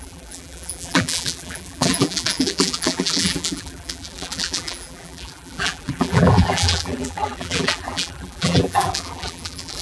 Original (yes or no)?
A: no